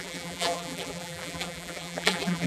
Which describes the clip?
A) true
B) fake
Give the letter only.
B